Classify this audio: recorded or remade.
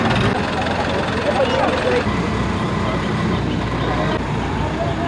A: recorded